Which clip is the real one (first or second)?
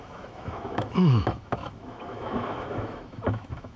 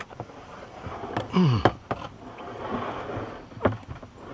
second